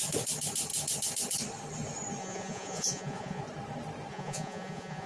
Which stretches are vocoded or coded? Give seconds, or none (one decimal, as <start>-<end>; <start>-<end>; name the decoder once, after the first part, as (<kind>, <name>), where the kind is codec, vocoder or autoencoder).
2.2-3.4 (vocoder, Vocos); 4.1-5.1